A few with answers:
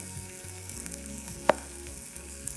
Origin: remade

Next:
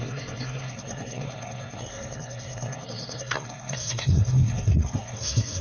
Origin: remade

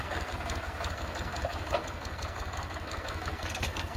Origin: remade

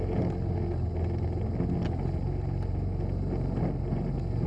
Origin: recorded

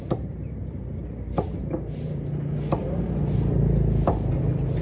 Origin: recorded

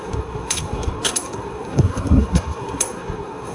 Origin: remade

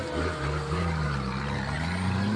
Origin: recorded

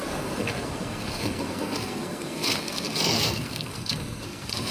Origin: remade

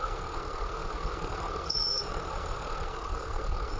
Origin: remade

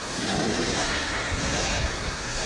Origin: remade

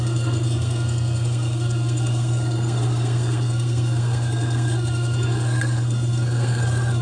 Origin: remade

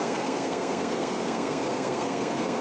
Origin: remade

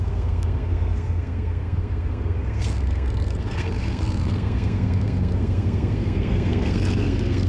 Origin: remade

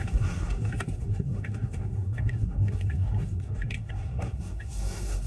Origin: remade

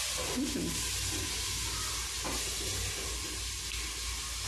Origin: recorded